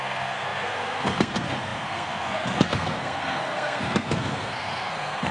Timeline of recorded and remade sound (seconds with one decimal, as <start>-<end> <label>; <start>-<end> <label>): 0.0-5.3 remade